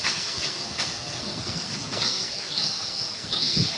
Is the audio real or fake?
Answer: fake